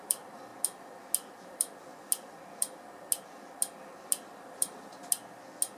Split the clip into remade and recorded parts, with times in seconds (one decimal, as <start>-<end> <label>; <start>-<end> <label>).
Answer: 0.0-0.5 remade; 0.5-1.4 recorded; 1.4-1.9 remade; 1.9-5.8 recorded